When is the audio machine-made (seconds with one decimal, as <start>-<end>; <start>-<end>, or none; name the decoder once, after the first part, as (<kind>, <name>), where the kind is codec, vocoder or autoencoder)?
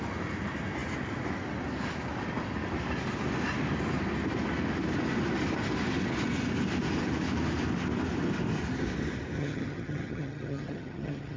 9.4-11.4 (vocoder, HiFi-GAN)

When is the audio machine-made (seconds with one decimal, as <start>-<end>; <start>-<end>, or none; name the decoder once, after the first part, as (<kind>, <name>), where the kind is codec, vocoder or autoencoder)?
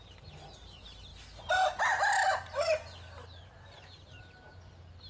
none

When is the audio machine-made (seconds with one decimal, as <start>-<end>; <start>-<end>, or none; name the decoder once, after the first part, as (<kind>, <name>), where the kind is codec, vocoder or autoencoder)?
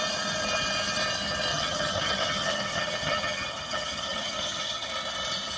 1.5-4.9 (vocoder, HiFi-GAN)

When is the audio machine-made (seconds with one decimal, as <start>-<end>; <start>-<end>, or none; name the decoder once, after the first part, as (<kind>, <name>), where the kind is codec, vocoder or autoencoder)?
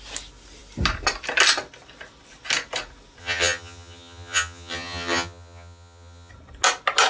3.2-6.3 (vocoder, HiFi-GAN)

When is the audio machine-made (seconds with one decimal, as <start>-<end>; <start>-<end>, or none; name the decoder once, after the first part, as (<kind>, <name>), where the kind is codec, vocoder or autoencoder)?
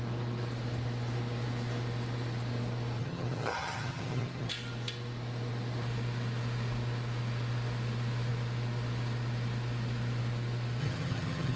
3.0-4.5 (vocoder, HiFi-GAN); 10.8-11.6